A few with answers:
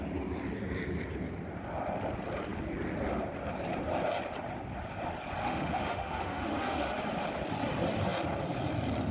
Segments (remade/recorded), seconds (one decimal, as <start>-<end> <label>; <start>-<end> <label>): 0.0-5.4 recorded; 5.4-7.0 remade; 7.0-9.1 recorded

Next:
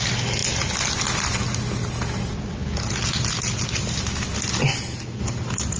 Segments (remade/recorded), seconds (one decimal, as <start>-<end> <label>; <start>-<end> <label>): 0.0-5.8 recorded

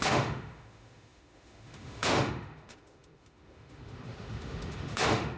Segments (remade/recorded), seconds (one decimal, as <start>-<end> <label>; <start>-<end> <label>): 0.0-5.4 remade

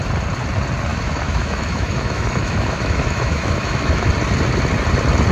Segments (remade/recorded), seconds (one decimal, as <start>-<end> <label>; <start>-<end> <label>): 0.0-0.9 recorded; 0.9-4.1 remade; 4.1-5.3 recorded

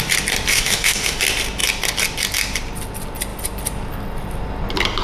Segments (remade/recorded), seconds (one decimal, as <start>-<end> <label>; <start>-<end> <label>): 0.0-0.5 recorded; 0.5-1.2 remade; 1.2-5.0 recorded

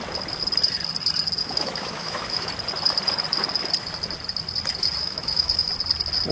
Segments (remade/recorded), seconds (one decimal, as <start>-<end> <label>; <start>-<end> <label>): 0.0-1.4 recorded; 1.4-2.5 remade; 2.5-5.0 recorded; 5.0-5.7 remade; 5.7-6.3 recorded

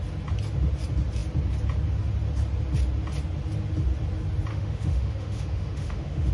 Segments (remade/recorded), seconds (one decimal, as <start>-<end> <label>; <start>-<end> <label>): 0.0-4.5 recorded; 4.5-6.3 remade